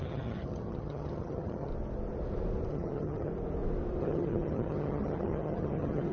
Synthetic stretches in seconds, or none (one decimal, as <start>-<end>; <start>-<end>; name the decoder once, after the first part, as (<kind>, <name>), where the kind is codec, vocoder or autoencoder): 0.0-1.7 (vocoder, HiFi-GAN); 2.7-3.3; 4.0-6.1